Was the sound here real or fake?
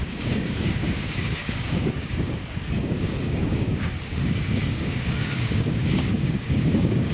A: fake